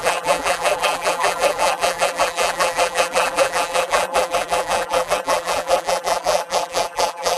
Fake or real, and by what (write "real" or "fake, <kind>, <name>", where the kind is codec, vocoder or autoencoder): fake, vocoder, BigVGAN v2